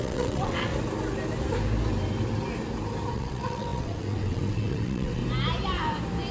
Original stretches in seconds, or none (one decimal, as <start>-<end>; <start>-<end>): 0.7-3.1; 5.2-6.3